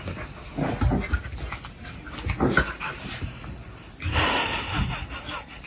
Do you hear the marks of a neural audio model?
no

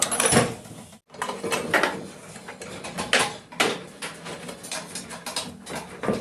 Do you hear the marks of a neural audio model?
no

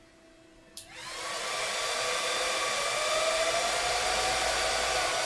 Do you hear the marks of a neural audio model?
no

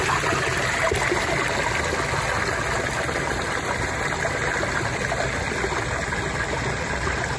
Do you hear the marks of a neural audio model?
no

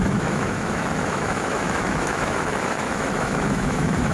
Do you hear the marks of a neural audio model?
yes